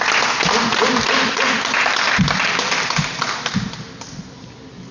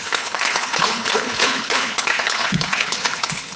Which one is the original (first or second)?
first